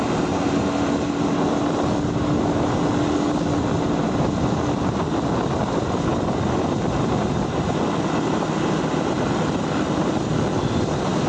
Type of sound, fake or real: real